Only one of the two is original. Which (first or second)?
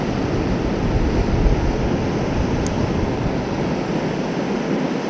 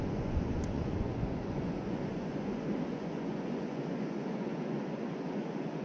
first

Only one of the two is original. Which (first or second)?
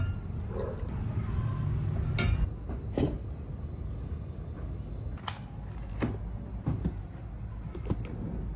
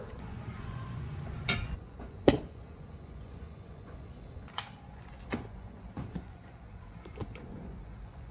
first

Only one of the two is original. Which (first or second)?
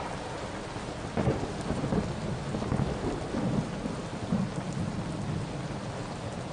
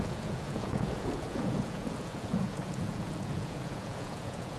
first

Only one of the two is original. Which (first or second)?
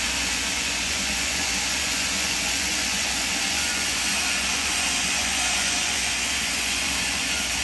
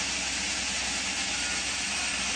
second